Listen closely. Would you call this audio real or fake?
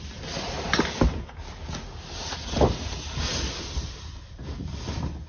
real